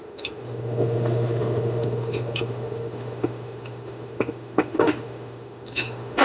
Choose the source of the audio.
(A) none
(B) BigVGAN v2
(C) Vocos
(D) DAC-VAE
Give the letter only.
D